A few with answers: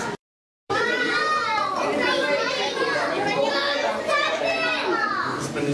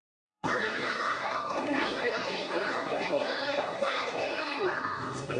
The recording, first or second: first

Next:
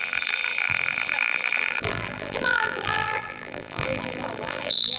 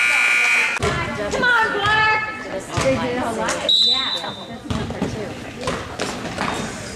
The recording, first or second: second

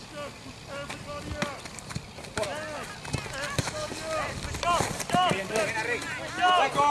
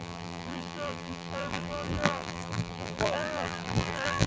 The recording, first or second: first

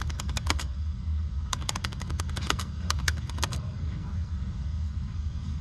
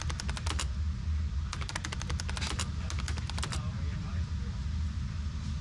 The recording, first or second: second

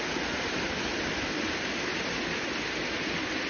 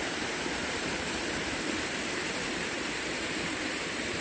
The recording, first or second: first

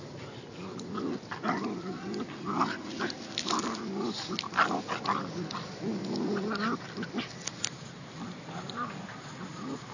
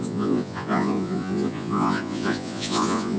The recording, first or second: first